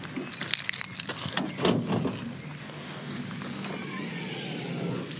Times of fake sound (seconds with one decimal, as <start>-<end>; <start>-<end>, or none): 2.6-3.2